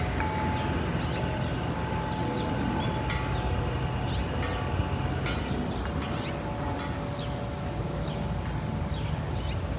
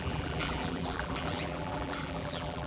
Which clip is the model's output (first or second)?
second